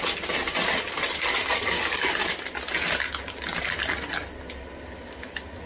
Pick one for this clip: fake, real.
real